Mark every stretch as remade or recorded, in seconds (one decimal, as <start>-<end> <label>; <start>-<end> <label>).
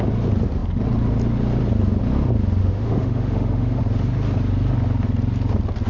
0.0-2.6 recorded; 2.6-3.8 remade; 3.8-5.9 recorded